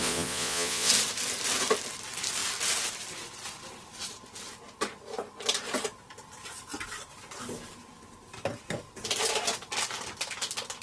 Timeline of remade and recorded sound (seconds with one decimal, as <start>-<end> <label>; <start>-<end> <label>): 0.0-0.9 remade; 0.9-10.8 recorded